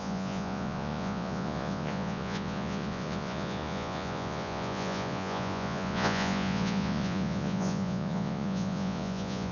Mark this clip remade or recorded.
remade